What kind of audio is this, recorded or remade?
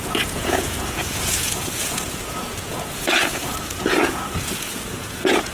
remade